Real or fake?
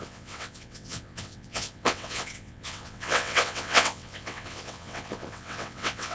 fake